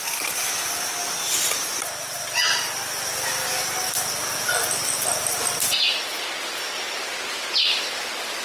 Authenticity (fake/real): real